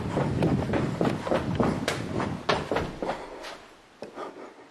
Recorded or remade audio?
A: recorded